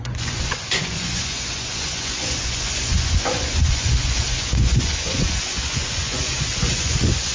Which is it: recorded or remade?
remade